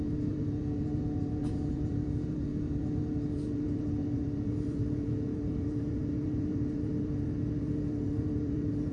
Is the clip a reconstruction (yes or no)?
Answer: yes